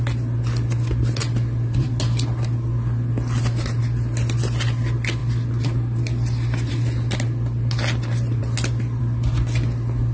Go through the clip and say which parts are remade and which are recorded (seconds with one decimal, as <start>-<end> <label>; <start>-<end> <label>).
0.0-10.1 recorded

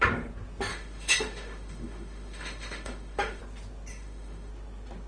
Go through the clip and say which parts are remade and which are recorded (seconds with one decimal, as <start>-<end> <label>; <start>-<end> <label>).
0.0-0.7 recorded; 0.7-3.4 remade; 3.4-3.9 recorded; 3.9-4.5 remade; 4.5-5.1 recorded

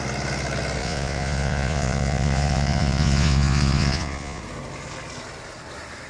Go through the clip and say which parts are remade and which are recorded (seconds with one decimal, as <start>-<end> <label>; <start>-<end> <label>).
0.0-0.8 recorded; 0.8-4.4 remade; 4.4-6.1 recorded